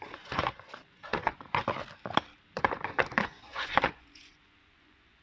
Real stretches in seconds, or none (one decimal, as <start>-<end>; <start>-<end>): 1.6-2.5